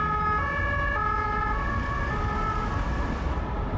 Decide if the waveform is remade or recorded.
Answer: recorded